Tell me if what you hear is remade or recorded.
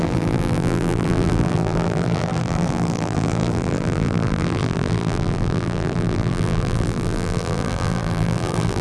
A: remade